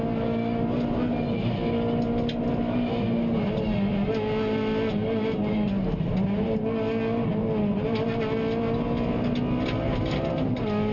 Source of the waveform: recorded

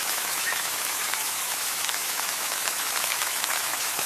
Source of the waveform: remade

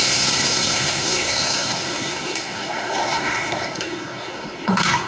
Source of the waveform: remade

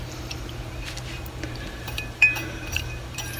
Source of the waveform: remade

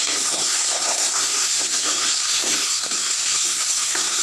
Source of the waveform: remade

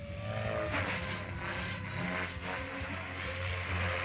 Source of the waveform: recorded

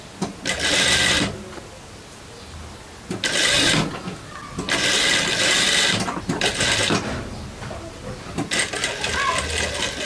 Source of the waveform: recorded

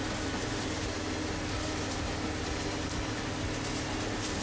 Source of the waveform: recorded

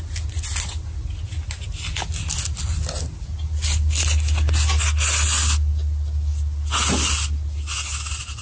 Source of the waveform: recorded